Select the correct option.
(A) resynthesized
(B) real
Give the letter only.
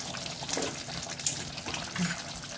B